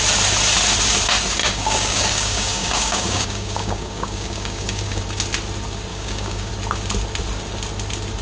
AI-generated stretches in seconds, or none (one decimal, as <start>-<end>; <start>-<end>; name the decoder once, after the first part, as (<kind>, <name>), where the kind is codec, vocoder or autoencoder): 1.4-5.0 (codec, DAC); 5.9-6.5